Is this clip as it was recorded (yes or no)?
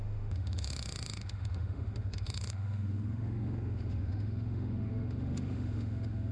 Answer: no